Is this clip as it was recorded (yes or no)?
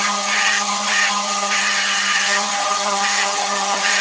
no